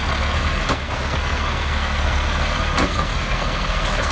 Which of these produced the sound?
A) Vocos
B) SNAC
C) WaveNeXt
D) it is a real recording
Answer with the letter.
B